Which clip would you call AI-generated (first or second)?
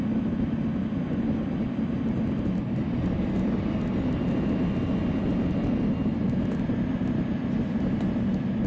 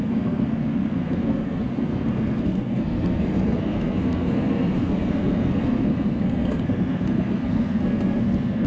second